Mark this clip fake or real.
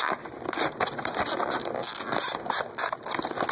real